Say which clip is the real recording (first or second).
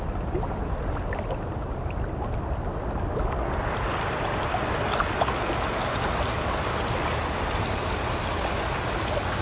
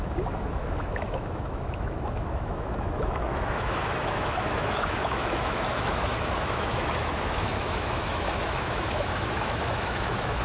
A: first